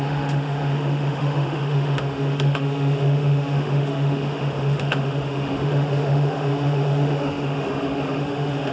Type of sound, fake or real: fake